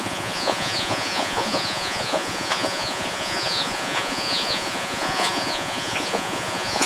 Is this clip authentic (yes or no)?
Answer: no